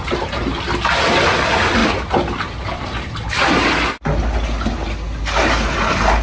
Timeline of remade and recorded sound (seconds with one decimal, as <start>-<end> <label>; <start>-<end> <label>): 0.0-6.2 recorded